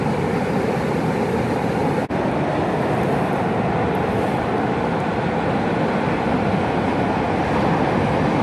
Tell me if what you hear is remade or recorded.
recorded